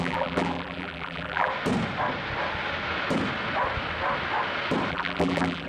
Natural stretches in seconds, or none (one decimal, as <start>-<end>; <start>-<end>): 1.5-4.9